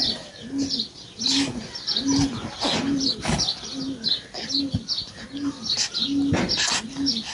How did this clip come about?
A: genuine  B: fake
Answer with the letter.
A